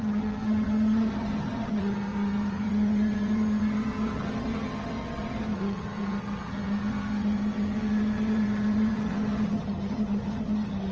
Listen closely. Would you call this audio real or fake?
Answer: fake